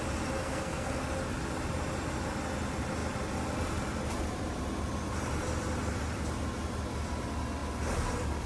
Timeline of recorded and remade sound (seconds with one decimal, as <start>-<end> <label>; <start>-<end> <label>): 0.0-0.4 recorded; 0.4-1.0 remade; 1.0-8.5 recorded